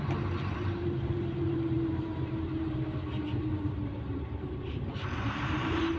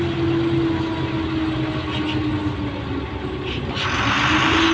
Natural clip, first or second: second